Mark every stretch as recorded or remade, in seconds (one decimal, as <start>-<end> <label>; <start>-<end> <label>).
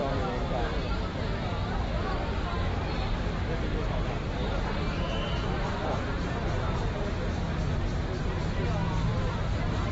0.0-9.1 recorded; 9.1-9.9 remade